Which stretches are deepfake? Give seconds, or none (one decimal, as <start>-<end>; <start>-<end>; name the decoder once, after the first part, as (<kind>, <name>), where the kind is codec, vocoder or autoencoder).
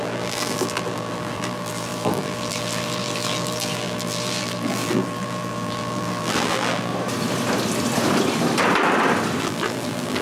0.0-6.9 (vocoder, BigVGAN v2); 9.4-10.2